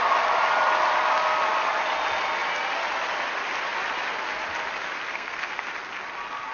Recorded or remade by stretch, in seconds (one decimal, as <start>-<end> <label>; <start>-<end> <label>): 0.0-5.1 recorded; 5.1-5.7 remade; 5.7-6.5 recorded